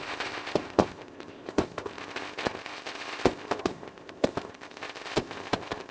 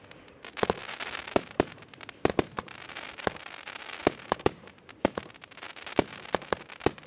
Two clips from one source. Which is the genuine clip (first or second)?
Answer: second